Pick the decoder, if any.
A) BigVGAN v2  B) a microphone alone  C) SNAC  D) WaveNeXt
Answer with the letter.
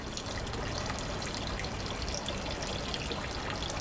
B